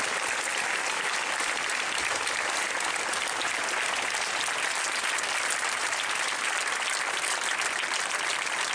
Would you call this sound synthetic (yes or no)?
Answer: no